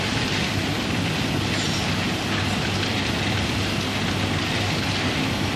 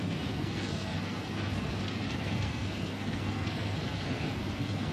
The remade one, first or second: second